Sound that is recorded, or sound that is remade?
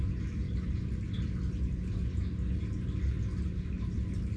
recorded